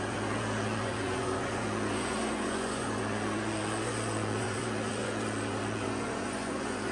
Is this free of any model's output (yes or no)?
no